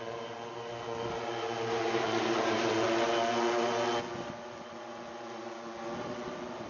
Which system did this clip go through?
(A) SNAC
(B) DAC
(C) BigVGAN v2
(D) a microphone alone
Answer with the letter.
D